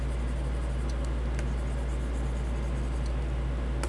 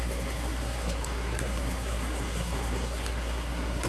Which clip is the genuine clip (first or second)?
first